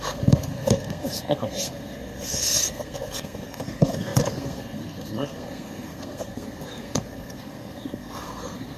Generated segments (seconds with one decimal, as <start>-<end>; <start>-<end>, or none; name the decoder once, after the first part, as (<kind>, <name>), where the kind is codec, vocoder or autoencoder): 0.0-8.8 (codec, SNAC)